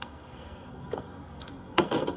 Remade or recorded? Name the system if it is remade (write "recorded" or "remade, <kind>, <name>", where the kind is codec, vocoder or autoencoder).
remade, codec, SNAC